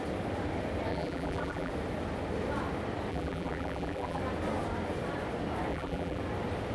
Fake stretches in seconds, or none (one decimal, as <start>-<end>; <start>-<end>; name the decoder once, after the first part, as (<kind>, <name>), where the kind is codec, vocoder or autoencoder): 0.9-1.7 (vocoder, BigVGAN v2); 3.1-4.2; 5.7-6.2